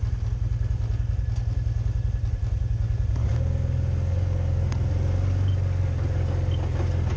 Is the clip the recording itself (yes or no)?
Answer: yes